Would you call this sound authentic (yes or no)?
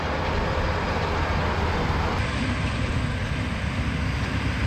yes